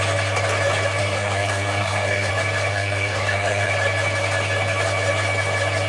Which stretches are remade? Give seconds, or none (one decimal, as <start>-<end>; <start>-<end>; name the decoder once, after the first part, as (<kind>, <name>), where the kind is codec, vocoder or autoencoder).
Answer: 1.0-2.3 (codec, SNAC); 2.7-3.7

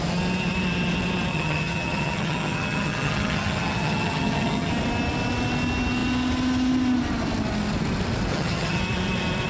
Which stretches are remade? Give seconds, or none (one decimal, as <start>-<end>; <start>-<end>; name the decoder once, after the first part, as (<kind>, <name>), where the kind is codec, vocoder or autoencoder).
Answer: 1.3-4.7 (vocoder, HiFi-GAN); 8.3-8.8

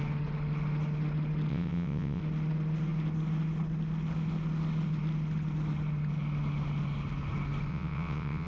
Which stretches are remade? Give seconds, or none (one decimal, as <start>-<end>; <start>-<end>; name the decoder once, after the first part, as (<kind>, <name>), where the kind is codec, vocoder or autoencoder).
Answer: 1.5-2.2 (vocoder, WaveNeXt); 7.7-8.5

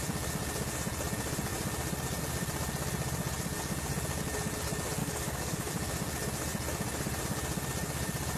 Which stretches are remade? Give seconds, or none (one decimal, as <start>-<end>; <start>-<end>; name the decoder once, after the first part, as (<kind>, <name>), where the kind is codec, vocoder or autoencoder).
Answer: 5.0-5.7 (codec, DAC)

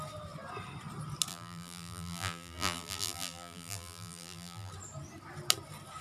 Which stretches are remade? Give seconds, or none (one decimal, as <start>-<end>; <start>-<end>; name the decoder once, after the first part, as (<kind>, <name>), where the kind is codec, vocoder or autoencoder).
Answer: 1.3-4.7 (vocoder, BigVGAN v2)